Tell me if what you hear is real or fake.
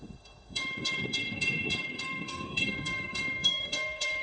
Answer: fake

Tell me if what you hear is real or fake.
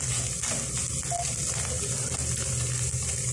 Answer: real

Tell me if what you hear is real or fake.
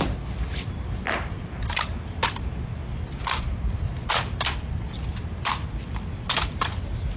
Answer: real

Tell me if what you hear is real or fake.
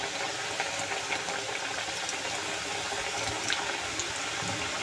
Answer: real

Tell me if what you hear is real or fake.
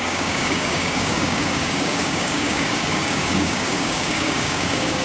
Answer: fake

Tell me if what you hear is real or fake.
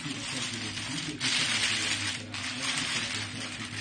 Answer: real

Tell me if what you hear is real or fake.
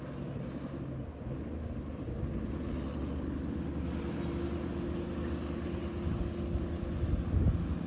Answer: real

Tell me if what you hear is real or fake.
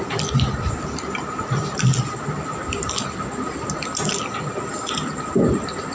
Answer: real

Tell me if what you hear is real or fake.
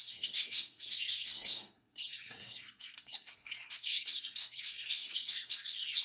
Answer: fake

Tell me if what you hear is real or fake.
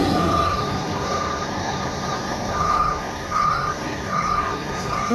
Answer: fake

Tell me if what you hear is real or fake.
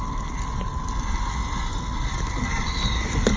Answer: real